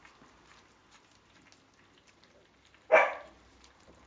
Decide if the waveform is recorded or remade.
recorded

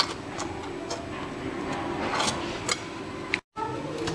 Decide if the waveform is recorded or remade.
recorded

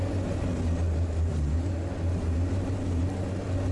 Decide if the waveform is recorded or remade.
recorded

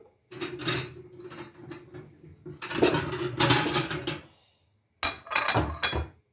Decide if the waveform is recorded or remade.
recorded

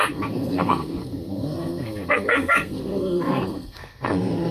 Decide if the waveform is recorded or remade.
remade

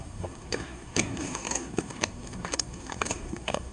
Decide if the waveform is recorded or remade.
remade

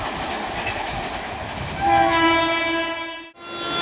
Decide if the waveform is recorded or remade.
recorded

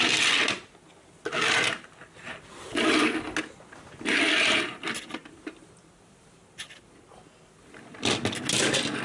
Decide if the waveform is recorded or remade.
recorded